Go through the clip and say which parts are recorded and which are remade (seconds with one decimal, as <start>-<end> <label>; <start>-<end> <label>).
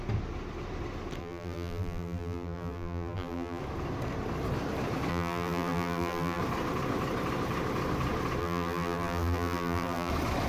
0.0-1.2 recorded; 1.2-3.6 remade; 3.6-5.1 recorded; 5.1-6.4 remade; 6.4-8.4 recorded; 8.4-10.1 remade; 10.1-10.5 recorded